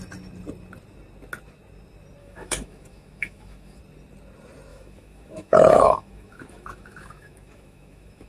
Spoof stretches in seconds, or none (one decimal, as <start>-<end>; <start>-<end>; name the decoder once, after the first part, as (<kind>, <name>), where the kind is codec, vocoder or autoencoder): 2.2-3.8 (autoencoder, DAC-VAE); 4.7-8.3

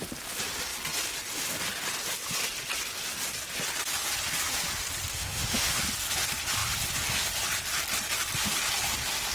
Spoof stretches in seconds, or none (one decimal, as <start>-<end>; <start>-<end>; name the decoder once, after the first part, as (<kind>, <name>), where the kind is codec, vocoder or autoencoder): 5.1-5.8 (autoencoder, DAC-VAE)

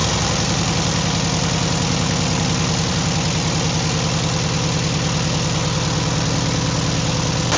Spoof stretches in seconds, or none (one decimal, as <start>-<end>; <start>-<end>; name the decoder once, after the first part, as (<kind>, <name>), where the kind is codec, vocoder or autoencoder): none